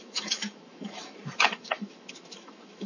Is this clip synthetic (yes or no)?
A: yes